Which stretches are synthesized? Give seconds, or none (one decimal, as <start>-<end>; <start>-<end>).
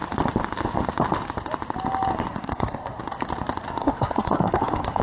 2.3-3.0; 3.8-5.0